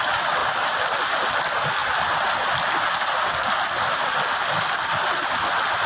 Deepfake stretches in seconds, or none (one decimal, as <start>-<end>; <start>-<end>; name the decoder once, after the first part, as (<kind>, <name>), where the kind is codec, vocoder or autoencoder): none